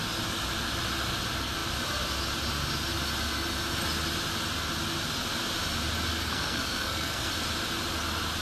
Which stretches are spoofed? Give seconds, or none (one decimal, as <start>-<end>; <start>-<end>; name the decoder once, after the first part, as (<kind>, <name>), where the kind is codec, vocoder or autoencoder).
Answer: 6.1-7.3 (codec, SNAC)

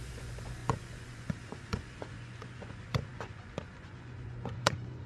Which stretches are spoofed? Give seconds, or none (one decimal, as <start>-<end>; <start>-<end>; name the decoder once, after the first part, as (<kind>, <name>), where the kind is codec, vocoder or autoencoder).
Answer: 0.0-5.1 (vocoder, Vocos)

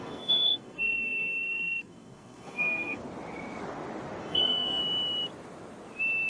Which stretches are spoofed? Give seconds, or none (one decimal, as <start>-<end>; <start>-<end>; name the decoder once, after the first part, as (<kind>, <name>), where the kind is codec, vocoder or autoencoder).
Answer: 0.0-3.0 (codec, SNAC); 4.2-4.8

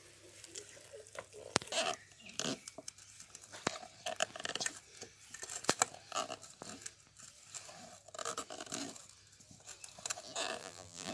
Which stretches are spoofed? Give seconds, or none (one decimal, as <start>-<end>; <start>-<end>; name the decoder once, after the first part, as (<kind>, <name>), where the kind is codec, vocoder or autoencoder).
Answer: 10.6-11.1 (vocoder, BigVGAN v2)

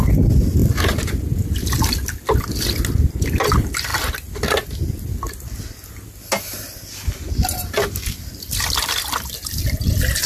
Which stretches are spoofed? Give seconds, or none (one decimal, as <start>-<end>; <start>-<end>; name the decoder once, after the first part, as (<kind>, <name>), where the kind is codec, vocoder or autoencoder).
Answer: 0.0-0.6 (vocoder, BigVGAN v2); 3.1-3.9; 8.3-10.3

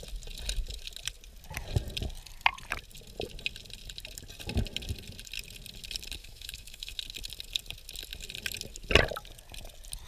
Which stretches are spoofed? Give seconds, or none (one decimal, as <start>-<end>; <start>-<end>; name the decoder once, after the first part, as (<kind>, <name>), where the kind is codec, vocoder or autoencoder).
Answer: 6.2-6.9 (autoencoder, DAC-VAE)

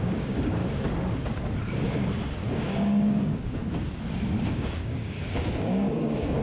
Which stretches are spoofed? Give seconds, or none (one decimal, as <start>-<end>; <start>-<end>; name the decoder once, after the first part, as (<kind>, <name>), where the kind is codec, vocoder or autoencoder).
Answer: 0.0-0.6 (codec, DAC); 2.5-3.6; 4.5-6.4

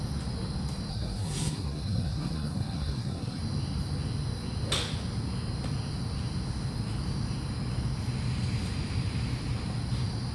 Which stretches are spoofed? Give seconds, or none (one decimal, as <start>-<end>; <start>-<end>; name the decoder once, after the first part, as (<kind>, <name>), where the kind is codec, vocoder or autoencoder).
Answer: 0.9-3.4 (codec, SNAC)